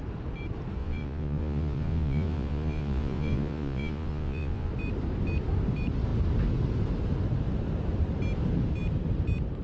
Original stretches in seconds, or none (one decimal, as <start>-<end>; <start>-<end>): 0.0-0.8; 4.7-9.6